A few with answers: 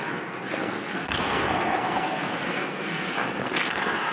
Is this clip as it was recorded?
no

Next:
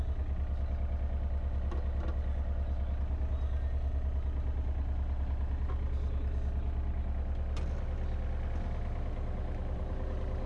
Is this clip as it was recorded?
yes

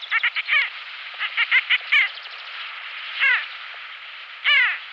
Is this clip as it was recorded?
yes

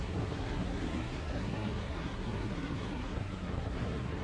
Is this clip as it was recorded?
no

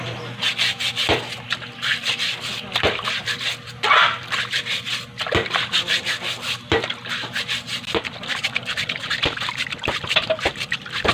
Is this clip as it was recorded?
yes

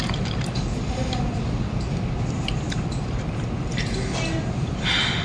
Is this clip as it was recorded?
yes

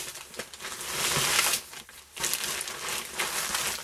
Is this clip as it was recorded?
yes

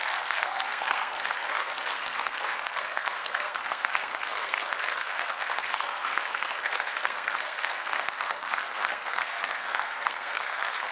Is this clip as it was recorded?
no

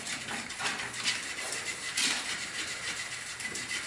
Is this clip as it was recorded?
yes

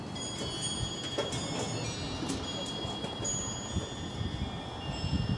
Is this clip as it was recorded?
yes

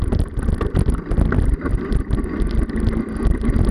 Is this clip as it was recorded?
yes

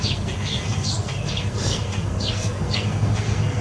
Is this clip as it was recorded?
no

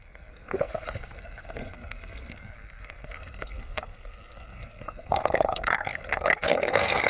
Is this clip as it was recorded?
no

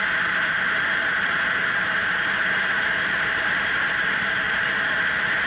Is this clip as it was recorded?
yes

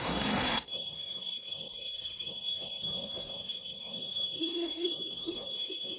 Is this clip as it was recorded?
no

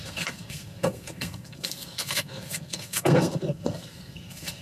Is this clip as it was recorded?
no